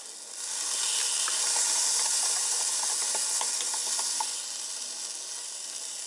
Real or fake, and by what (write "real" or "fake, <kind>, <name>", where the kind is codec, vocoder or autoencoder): real